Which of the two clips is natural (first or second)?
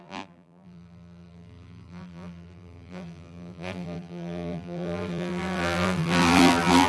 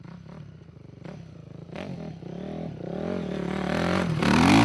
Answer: second